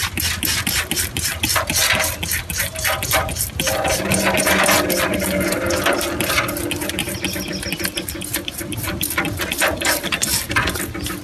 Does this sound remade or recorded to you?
recorded